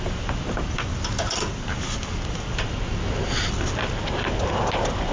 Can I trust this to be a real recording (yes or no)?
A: yes